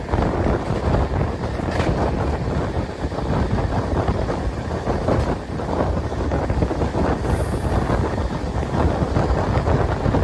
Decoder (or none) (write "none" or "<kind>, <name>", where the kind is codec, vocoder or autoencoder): none